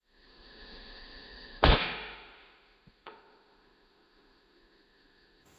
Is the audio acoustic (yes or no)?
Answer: no